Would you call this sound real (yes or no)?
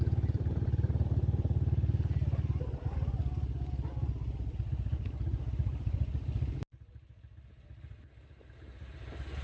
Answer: yes